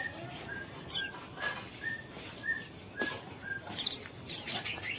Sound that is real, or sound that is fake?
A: real